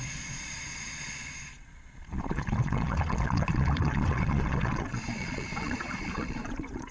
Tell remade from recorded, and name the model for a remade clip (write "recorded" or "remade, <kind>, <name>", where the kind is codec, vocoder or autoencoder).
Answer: remade, vocoder, Vocos